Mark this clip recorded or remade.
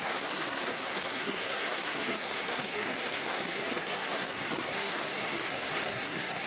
remade